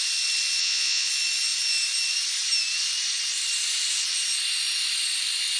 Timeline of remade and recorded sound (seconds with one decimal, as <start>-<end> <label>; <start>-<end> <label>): 0.0-0.6 recorded; 0.6-1.1 remade; 1.1-5.6 recorded